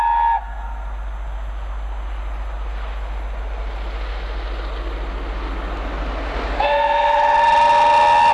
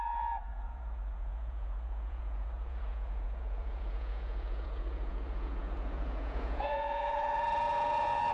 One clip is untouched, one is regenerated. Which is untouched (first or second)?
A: first